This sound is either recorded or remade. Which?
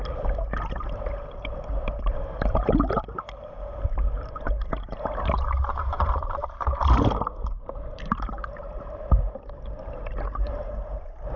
remade